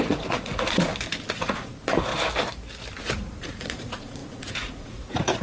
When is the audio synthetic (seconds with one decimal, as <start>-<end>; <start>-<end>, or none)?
0.0-0.9; 1.4-2.1; 3.0-5.4